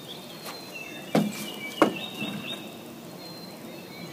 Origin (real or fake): real